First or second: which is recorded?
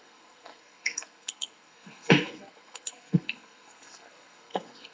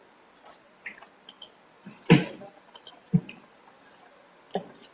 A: second